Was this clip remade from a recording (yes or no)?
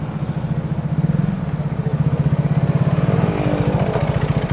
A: no